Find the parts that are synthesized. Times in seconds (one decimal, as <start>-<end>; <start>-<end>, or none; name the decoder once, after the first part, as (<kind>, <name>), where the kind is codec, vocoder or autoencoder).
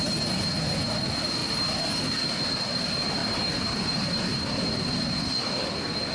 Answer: 1.4-2.0 (vocoder, BigVGAN v2); 3.2-5.2